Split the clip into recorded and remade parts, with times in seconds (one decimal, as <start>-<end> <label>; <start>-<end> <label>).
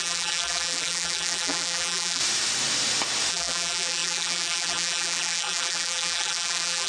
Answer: 0.0-2.2 remade; 2.2-3.3 recorded; 3.3-6.9 remade